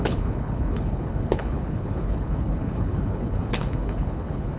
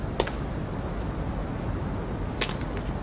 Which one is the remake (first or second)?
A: first